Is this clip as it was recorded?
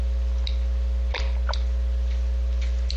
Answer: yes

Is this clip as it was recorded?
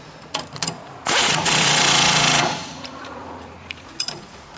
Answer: no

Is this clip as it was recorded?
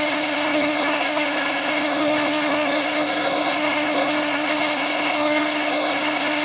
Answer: no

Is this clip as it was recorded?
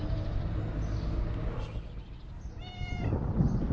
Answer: yes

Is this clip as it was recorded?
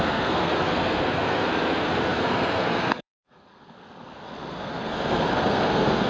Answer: no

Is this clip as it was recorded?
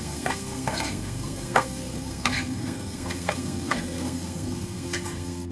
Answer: no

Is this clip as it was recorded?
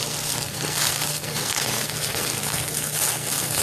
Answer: no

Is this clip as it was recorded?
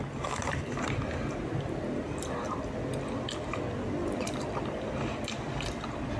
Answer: yes